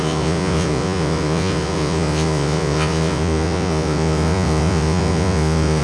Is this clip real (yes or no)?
no